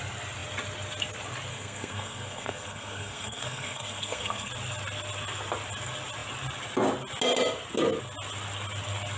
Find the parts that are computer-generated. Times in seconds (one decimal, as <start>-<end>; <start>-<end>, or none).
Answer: 1.5-4.5